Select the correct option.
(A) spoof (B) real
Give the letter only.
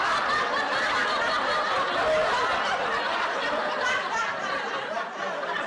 B